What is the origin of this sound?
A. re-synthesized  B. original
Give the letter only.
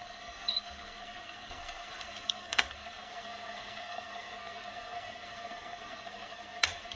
A